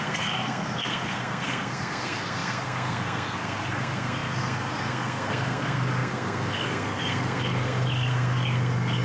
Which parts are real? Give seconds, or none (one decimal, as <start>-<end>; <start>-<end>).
none